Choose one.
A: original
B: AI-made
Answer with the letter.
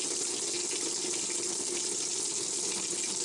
A